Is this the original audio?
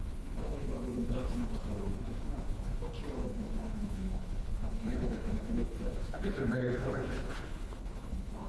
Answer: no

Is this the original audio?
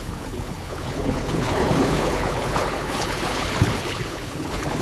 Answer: no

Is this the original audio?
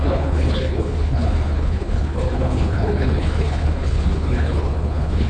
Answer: no